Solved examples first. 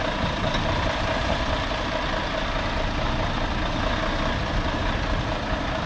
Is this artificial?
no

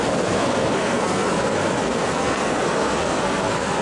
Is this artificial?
yes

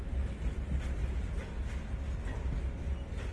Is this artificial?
no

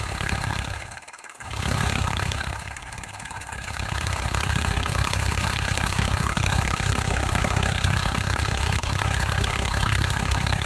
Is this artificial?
yes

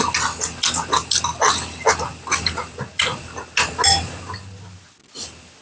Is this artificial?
no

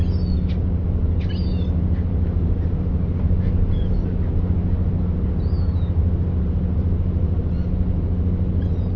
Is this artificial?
no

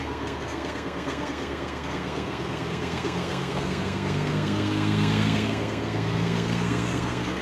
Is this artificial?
yes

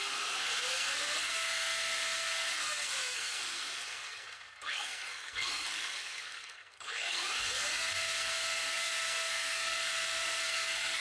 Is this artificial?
yes